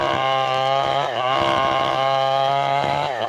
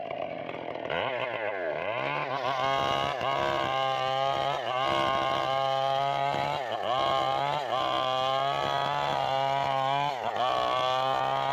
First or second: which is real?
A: second